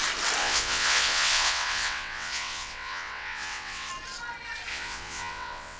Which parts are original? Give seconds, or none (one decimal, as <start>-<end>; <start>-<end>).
0.0-0.4; 3.9-4.7